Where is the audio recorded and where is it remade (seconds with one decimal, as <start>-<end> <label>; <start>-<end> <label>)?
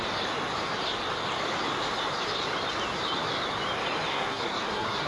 0.0-4.1 recorded; 4.1-5.1 remade